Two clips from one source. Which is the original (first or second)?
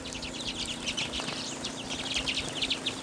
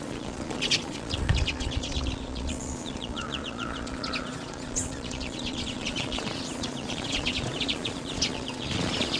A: first